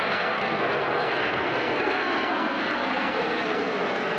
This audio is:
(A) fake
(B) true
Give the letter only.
A